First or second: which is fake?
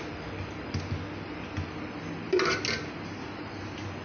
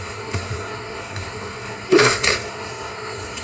second